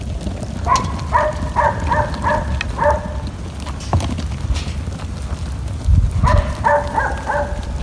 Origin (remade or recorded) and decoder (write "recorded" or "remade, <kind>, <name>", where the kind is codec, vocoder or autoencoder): recorded